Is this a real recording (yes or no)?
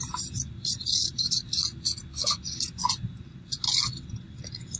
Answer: yes